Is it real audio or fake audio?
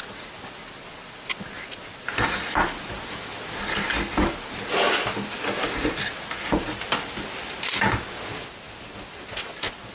real